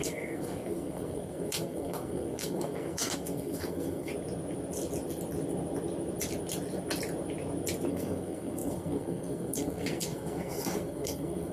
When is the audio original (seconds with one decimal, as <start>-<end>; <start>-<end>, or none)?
4.1-7.9